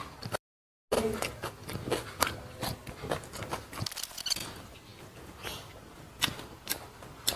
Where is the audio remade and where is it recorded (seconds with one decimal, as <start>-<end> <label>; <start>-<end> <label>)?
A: 0.0-7.4 recorded